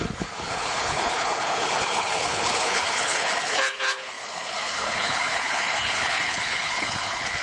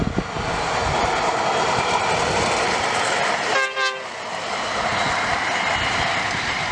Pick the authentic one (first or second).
second